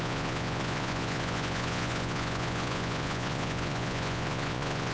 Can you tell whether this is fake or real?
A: fake